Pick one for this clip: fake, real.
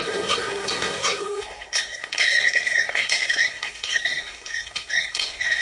fake